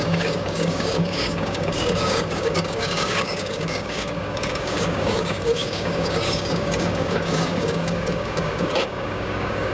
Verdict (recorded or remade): remade